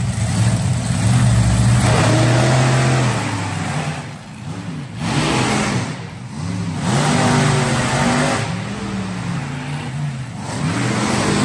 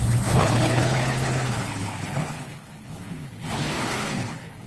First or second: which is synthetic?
second